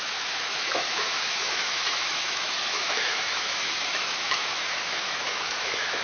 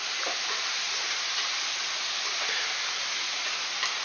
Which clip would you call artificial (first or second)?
first